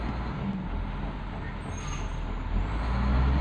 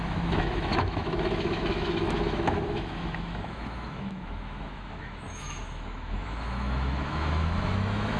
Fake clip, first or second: second